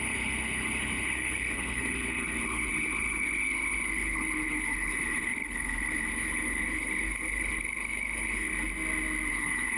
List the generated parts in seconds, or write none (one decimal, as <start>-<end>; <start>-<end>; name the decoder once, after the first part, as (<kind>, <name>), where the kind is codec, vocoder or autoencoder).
0.0-8.5 (codec, HILCodec); 9.3-9.8